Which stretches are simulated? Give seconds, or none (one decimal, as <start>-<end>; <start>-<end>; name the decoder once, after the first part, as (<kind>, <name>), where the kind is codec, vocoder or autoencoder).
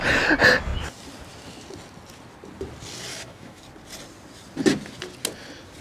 3.1-3.6 (autoencoder, DAC-VAE)